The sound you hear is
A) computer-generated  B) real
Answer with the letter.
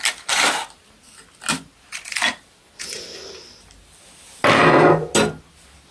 B